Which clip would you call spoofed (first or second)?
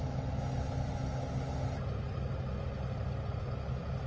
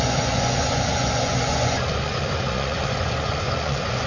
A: second